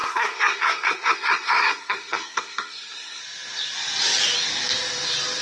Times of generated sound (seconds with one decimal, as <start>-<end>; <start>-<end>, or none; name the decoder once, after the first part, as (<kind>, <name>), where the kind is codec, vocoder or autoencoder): 0.0-3.2 (codec, SNAC)